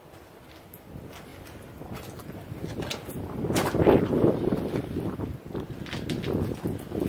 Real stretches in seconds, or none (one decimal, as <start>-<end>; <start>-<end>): 0.0-7.1